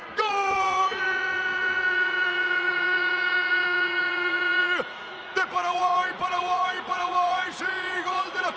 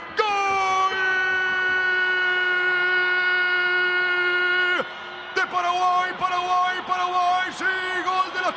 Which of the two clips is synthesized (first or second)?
first